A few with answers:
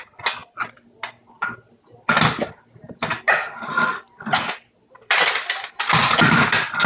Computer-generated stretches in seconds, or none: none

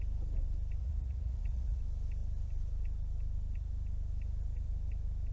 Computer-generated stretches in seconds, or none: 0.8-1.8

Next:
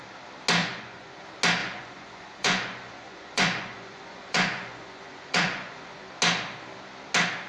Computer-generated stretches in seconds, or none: 0.6-1.2; 1.6-6.1

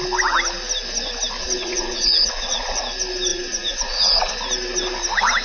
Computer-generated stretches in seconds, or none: 1.4-2.8; 3.3-4.3